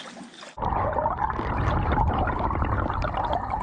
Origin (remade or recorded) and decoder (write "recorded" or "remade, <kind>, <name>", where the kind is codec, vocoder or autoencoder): recorded